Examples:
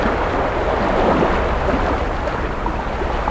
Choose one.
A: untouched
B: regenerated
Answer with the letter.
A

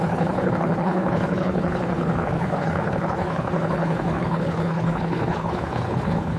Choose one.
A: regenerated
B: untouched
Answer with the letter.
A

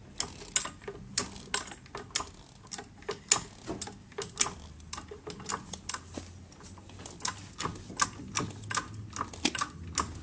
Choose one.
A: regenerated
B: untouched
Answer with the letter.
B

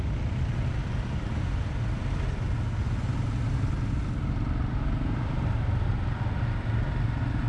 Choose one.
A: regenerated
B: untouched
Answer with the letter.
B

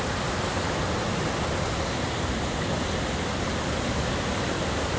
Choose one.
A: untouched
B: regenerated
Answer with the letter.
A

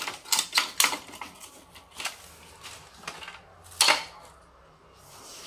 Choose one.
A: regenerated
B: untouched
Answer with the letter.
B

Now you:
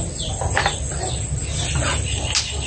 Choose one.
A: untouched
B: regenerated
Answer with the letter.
A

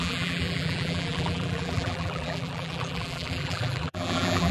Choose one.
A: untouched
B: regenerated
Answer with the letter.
B